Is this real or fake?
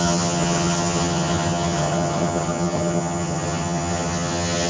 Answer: fake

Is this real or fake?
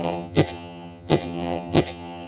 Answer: fake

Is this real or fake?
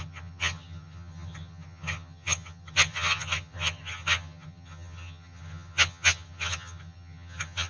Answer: fake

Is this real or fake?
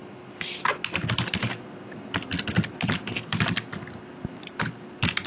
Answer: real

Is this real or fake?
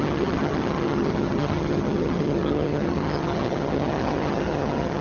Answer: fake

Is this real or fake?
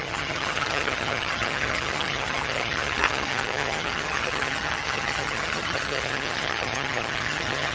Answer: fake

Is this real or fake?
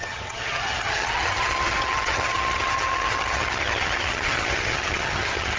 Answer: fake